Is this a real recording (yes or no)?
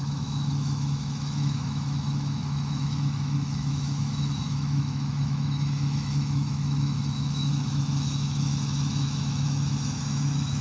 no